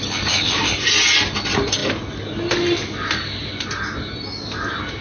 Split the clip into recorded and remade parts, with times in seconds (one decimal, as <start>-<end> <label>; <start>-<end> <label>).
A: 0.0-5.0 recorded